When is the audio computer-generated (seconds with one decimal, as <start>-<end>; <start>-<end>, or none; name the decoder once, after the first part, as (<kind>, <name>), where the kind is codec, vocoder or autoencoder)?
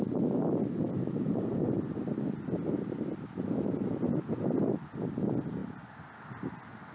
none